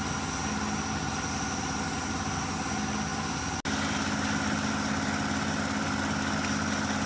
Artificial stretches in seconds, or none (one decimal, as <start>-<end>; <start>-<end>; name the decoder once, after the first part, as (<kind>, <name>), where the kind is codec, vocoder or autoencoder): none